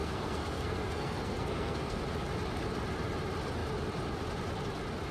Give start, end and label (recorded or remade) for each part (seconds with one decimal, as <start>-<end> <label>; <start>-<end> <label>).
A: 0.0-2.0 remade; 2.0-5.1 recorded